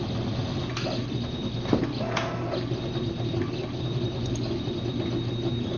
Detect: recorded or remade recorded